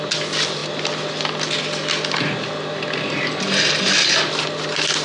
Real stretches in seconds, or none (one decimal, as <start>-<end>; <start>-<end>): 0.0-5.0